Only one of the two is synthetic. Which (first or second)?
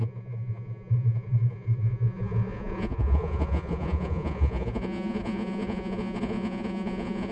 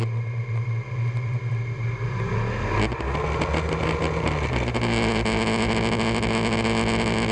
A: first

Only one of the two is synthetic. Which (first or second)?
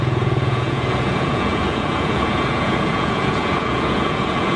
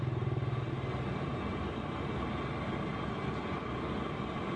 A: first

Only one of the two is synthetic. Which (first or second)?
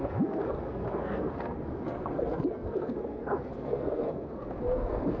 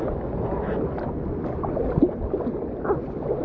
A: first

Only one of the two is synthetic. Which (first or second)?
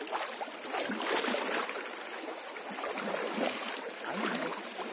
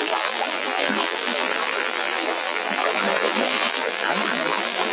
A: second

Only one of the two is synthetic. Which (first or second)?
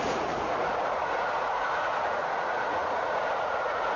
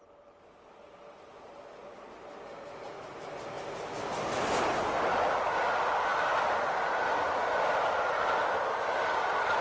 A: first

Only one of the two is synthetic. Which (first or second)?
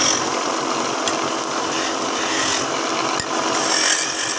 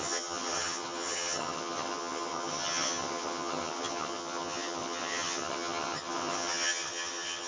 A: second